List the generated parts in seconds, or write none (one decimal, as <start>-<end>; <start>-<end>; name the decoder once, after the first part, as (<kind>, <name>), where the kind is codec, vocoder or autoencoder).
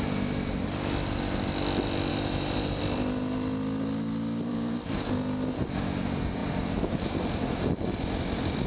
2.1-2.8 (vocoder, BigVGAN v2); 4.5-5.1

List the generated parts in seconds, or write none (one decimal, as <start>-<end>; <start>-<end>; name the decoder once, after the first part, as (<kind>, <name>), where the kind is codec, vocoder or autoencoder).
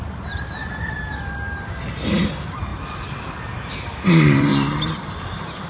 0.0-0.6 (vocoder, BigVGAN v2); 1.9-2.7; 3.3-4.5; 5.1-5.7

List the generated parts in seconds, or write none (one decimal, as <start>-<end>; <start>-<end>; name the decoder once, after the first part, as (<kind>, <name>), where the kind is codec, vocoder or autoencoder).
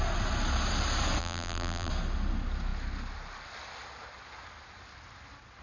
1.2-1.9 (vocoder, BigVGAN v2)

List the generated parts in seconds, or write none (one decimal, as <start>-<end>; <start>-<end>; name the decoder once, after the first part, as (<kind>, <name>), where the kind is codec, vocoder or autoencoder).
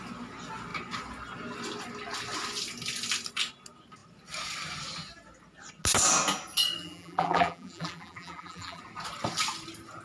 6.8-8.8 (vocoder, BigVGAN v2)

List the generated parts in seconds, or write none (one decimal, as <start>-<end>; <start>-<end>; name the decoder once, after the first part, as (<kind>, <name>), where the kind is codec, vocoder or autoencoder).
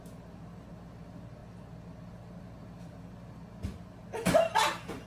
none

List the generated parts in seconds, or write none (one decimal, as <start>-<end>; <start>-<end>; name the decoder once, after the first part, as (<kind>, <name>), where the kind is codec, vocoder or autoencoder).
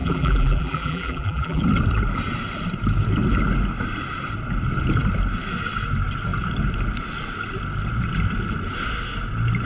0.0-1.6 (vocoder, BigVGAN v2)